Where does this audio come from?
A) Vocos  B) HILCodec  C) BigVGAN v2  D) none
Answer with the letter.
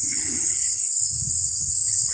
B